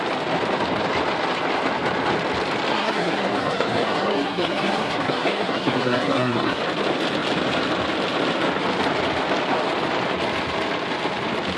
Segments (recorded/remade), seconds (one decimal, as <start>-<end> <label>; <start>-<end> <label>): 0.0-2.7 recorded; 2.7-6.6 remade; 6.6-11.6 recorded